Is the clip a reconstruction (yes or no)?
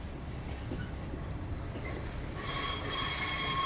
no